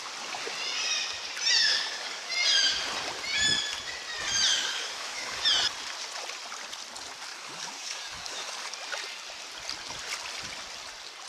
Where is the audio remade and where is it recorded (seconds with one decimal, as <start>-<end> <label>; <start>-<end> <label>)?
0.0-1.6 recorded; 1.6-2.3 remade; 2.3-4.5 recorded; 4.5-5.4 remade; 5.4-7.3 recorded; 7.3-8.7 remade; 8.7-11.3 recorded

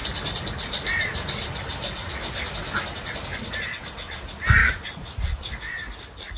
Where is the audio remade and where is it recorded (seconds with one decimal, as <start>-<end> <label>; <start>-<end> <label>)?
0.0-4.6 recorded; 4.6-5.2 remade; 5.2-6.4 recorded

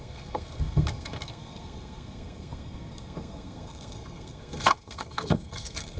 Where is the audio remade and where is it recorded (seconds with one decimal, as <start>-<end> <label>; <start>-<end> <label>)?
0.0-6.0 remade

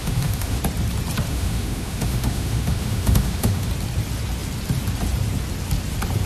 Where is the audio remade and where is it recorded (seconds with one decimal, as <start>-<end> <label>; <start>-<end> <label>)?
0.0-0.6 remade; 0.6-1.3 recorded; 1.3-3.7 remade; 3.7-6.3 recorded

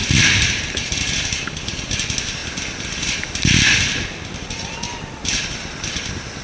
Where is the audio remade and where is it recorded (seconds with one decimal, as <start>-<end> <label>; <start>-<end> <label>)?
0.0-2.4 remade; 2.4-6.4 recorded

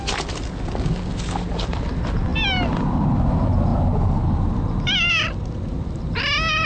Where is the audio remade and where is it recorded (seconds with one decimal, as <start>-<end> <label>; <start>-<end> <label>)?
0.0-6.7 recorded